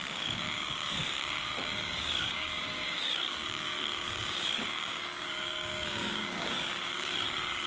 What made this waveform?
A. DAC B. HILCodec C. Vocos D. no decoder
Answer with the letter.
A